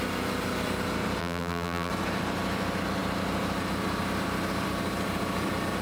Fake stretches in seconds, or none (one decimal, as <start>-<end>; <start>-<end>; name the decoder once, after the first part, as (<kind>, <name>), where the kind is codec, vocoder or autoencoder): 1.2-1.9 (vocoder, BigVGAN v2)